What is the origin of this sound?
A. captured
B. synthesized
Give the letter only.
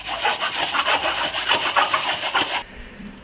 A